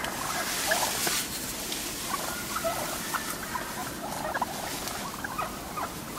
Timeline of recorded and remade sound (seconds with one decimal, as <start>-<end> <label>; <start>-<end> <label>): 0.0-6.2 recorded